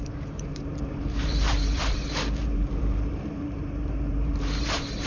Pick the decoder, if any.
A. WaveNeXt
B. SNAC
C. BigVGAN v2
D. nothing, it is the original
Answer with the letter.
C